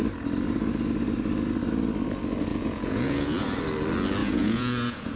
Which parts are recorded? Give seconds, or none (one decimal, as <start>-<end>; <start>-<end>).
0.0-2.5; 3.4-4.2